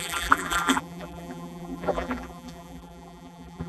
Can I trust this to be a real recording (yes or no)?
no